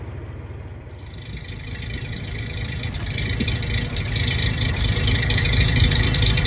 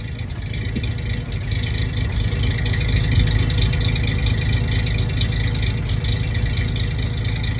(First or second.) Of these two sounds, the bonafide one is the second